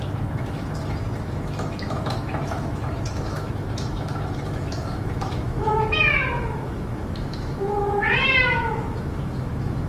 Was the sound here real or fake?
fake